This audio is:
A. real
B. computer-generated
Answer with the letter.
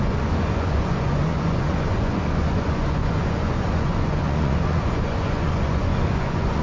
B